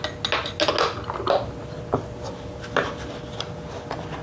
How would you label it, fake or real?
real